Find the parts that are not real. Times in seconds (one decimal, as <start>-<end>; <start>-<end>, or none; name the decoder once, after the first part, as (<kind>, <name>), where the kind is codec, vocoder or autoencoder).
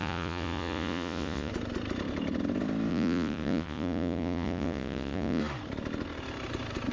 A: 0.0-1.5 (vocoder, Vocos); 2.9-5.4